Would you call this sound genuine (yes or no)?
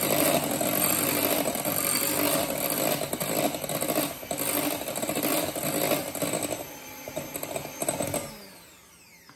yes